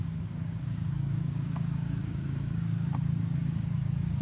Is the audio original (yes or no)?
no